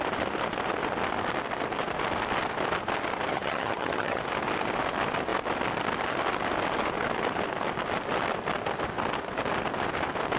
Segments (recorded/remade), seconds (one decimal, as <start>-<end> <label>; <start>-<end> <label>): 0.0-3.3 recorded; 3.3-4.2 remade; 4.2-10.4 recorded

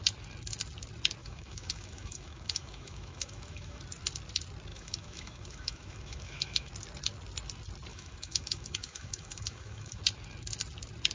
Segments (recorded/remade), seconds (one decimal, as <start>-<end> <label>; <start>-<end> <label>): 0.0-1.2 recorded; 1.2-3.8 remade; 3.8-4.7 recorded; 4.7-6.7 remade; 6.7-7.9 recorded; 7.9-10.0 remade; 10.0-11.1 recorded